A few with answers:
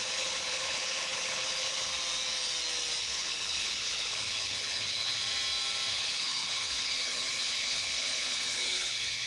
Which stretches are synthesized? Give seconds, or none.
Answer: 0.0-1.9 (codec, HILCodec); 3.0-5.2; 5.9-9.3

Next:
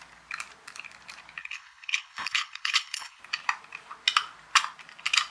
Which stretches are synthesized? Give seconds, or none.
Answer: 1.4-3.2 (codec, HILCodec)

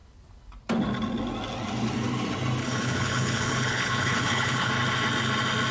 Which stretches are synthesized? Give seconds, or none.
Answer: 2.6-4.7 (codec, HILCodec)

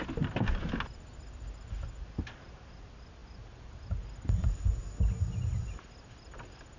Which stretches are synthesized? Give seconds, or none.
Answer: none

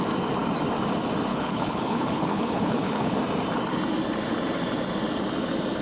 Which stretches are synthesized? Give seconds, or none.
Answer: 1.3-3.2 (codec, HILCodec)

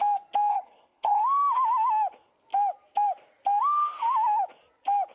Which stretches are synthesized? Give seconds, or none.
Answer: 0.5-1.2 (codec, HILCodec)

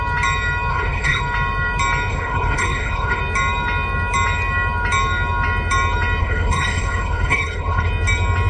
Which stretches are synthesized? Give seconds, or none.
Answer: 0.7-1.2 (codec, HILCodec); 2.1-3.2; 6.2-7.9